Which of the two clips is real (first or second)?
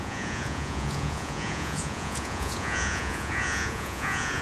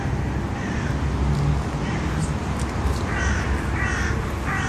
second